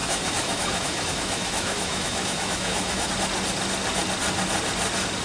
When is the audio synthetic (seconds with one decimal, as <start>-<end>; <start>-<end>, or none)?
0.0-3.1